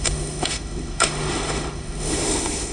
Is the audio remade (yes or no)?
yes